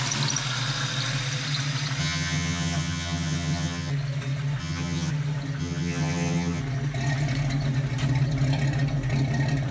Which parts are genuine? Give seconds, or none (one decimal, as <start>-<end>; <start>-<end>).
0.0-2.0; 3.9-4.6; 5.1-5.6; 6.6-9.7

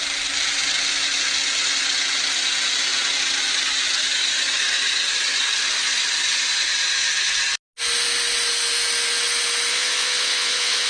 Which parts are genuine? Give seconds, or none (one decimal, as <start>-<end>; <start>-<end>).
0.0-9.7